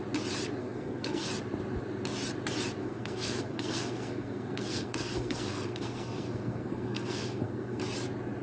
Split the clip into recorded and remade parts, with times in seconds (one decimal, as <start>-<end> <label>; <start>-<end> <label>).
0.0-0.6 recorded; 0.6-1.3 remade; 1.3-2.8 recorded; 2.8-7.8 remade; 7.8-8.4 recorded